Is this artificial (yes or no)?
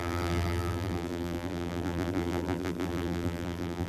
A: yes